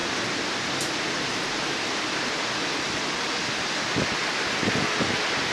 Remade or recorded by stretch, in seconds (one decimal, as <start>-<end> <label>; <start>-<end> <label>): 0.0-2.3 remade; 2.3-5.5 recorded